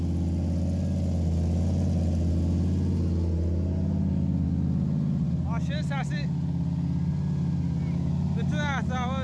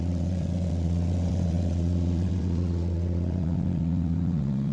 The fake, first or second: second